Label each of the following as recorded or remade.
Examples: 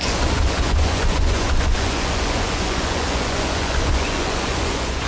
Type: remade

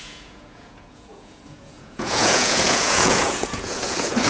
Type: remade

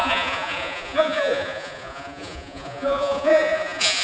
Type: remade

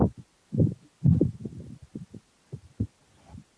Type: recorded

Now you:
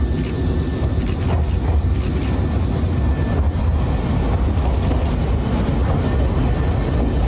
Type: recorded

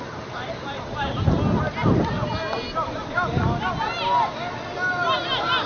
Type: recorded